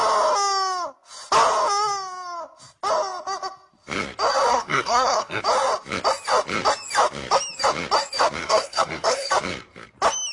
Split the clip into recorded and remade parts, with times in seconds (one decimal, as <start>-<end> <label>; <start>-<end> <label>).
0.0-4.5 recorded; 4.5-5.4 remade; 5.4-8.4 recorded; 8.4-9.3 remade; 9.3-10.3 recorded